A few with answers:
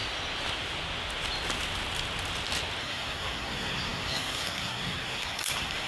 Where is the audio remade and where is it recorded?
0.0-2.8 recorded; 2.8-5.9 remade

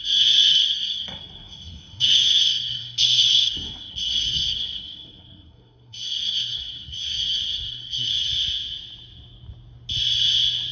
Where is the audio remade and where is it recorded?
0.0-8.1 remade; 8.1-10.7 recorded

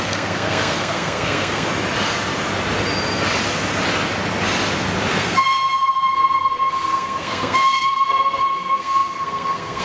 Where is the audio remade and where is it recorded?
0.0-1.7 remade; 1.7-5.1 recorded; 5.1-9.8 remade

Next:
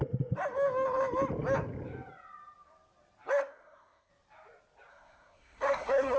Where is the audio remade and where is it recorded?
0.0-3.4 recorded; 3.4-4.1 remade; 4.1-4.9 recorded; 4.9-6.2 remade

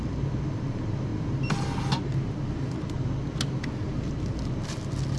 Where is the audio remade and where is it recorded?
0.0-5.2 recorded